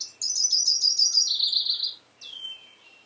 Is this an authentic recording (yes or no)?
yes